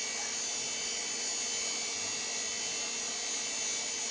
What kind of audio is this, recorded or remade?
recorded